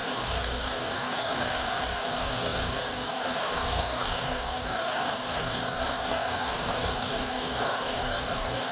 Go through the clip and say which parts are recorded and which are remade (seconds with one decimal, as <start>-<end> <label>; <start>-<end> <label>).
0.0-8.7 remade